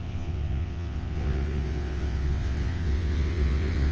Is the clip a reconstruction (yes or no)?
yes